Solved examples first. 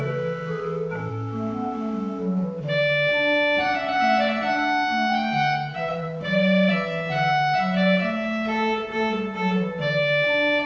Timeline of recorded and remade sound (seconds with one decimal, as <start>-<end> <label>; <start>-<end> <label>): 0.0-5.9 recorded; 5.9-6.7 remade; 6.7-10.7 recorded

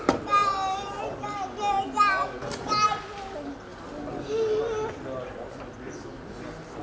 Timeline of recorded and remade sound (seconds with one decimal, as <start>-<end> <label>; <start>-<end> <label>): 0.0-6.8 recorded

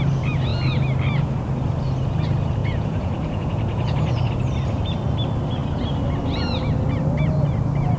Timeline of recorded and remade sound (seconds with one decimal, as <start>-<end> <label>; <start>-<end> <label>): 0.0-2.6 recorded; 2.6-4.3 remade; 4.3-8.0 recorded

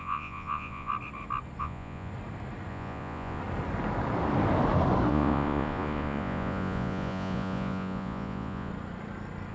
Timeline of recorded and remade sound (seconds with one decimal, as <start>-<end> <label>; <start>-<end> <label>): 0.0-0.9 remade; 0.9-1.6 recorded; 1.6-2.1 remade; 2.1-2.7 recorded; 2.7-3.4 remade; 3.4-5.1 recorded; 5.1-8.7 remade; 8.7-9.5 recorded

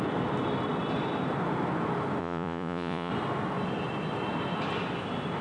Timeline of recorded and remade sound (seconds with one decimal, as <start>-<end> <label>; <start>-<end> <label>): 0.0-2.2 recorded; 2.2-3.1 remade; 3.1-5.4 recorded